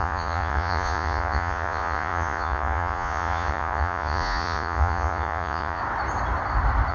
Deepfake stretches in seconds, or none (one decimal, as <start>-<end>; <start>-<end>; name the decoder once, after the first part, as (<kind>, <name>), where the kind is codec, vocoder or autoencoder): 0.0-5.8 (vocoder, Vocos)